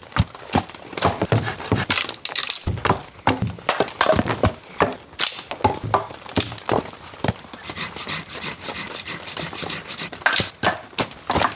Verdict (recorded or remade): recorded